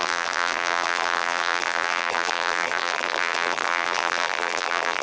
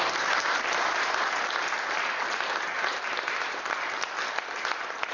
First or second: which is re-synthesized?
first